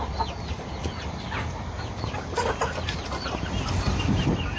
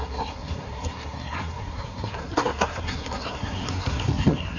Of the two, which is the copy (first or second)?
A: second